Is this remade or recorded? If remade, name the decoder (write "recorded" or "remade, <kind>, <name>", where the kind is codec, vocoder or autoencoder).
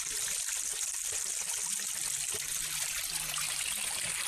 recorded